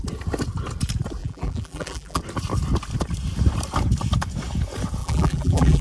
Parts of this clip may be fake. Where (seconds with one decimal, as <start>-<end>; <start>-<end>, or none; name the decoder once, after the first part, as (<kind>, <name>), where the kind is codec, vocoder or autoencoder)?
1.2-2.2 (vocoder, BigVGAN v2); 5.0-5.8